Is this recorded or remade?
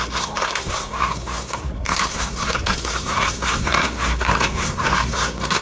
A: remade